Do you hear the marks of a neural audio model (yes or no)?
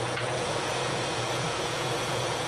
yes